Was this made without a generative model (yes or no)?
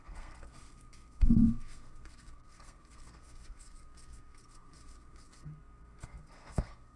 no